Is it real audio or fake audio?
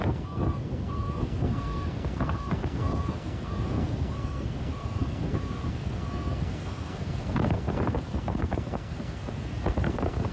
fake